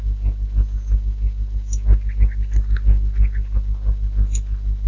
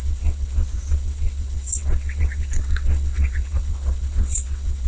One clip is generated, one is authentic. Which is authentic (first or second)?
first